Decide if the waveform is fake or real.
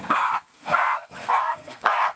fake